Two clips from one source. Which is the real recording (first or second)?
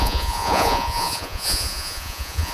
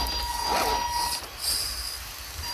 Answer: second